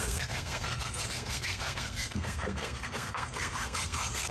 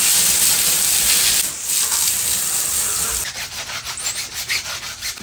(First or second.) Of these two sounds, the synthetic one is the first